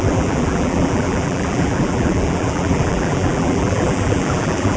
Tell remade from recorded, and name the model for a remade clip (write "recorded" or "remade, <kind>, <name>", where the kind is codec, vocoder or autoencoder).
remade, vocoder, BigVGAN v2